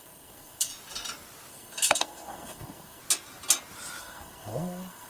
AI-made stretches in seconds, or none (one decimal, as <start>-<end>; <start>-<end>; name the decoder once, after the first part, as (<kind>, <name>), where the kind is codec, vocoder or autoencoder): 0.0-0.7 (codec, SNAC); 1.5-3.0; 4.0-5.1